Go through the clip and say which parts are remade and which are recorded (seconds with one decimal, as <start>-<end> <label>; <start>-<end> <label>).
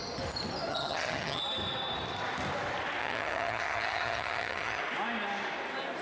0.0-0.7 recorded; 0.7-1.4 remade; 1.4-3.0 recorded; 3.0-4.8 remade; 4.8-6.0 recorded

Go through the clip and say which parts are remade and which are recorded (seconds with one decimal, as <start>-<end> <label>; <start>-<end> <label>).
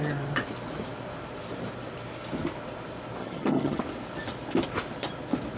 0.0-3.2 recorded; 3.2-3.8 remade; 3.8-5.6 recorded